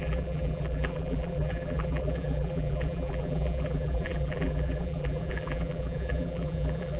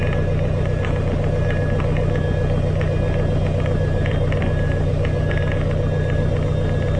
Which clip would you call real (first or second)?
second